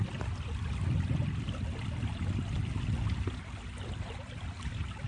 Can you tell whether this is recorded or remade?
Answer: recorded